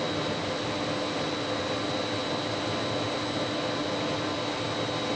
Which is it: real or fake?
real